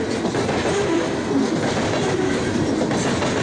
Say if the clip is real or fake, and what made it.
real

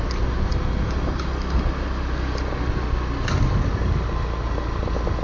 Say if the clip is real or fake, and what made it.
real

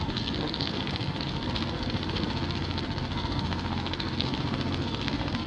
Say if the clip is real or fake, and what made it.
fake, codec, SNAC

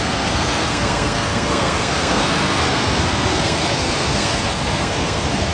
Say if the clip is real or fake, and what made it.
fake, codec, SNAC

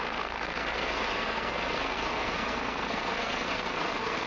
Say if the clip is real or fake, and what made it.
fake, codec, SNAC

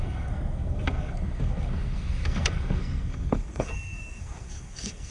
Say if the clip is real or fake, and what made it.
fake, codec, SNAC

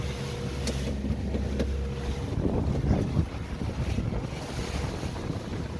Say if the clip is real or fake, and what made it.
real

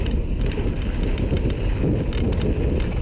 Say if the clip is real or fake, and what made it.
real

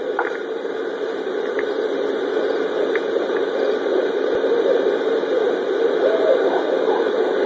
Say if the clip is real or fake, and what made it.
real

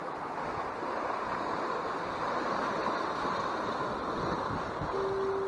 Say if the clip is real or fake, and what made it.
real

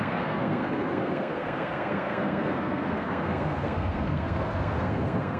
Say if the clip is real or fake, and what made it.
fake, codec, SNAC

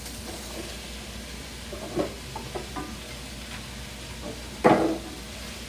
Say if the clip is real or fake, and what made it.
real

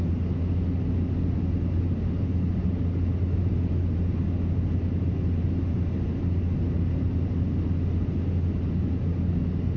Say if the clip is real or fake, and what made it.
real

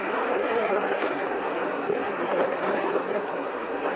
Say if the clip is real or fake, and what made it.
fake, codec, SNAC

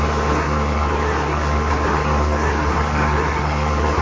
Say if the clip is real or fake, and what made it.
fake, codec, SNAC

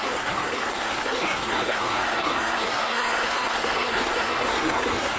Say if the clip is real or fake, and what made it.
fake, codec, SNAC